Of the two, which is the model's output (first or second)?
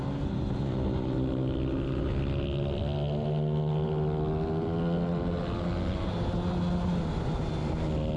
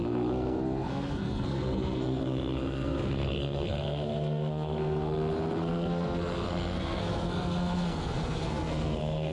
second